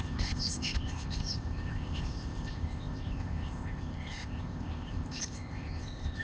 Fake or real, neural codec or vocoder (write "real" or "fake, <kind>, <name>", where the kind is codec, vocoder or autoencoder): fake, codec, ZipCodec